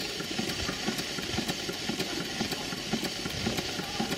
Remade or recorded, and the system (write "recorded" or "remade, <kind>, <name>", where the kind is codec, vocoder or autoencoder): recorded